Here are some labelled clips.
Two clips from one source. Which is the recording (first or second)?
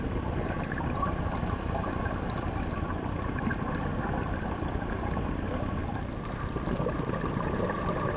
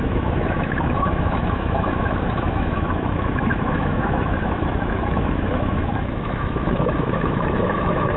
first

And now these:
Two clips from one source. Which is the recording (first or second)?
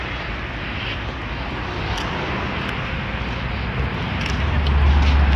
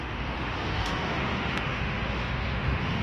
first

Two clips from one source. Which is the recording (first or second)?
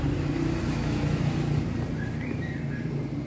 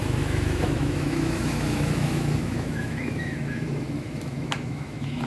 first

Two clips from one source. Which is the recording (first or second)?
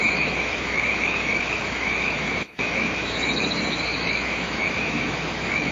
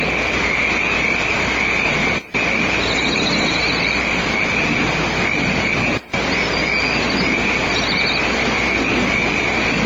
second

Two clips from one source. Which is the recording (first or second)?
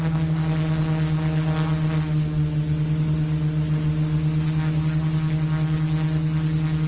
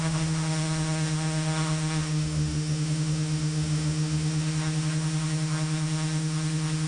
first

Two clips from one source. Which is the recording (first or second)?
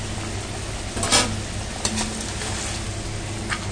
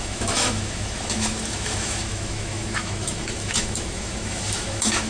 first